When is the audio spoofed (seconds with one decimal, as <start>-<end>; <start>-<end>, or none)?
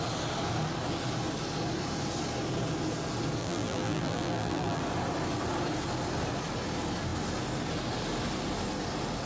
3.4-4.8